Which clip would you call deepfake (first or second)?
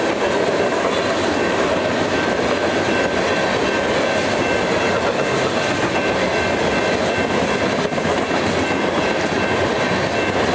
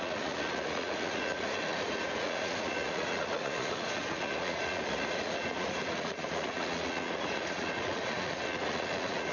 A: second